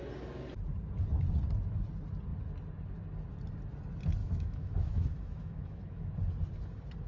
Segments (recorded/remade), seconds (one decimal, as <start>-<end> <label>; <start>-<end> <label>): 0.0-4.2 recorded; 4.2-6.1 remade; 6.1-7.1 recorded